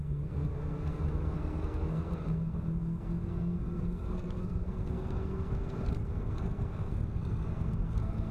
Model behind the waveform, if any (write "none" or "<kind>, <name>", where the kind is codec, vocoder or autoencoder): codec, SNAC